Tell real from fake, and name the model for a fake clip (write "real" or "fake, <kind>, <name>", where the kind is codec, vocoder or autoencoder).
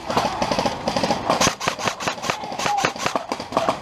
fake, vocoder, BigVGAN v2